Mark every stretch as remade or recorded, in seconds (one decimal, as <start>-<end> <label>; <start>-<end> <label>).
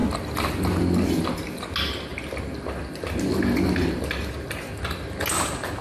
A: 0.0-5.8 recorded